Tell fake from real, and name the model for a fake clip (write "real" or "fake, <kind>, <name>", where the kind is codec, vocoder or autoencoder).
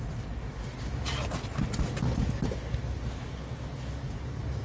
real